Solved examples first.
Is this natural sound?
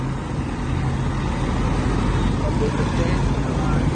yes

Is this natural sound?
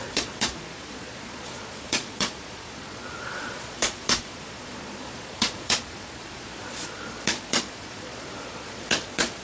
no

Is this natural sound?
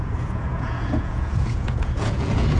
no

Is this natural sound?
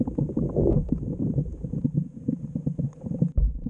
yes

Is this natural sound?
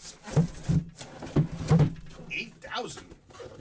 yes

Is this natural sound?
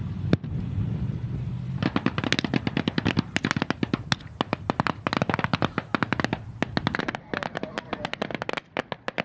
yes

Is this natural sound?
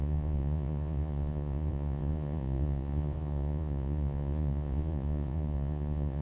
no